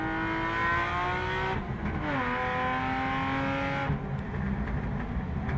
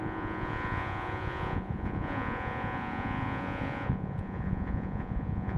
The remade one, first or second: second